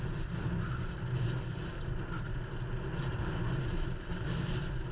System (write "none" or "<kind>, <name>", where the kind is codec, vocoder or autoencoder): none